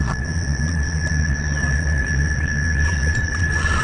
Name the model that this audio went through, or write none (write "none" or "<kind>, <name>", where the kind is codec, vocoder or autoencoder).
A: vocoder, Vocos